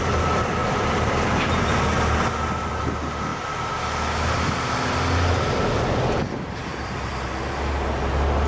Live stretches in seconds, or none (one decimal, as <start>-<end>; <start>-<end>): 0.0-0.6; 1.5-6.6; 7.1-8.5